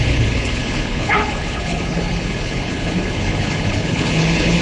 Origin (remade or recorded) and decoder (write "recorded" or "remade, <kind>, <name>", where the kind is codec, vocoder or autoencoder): remade, codec, HILCodec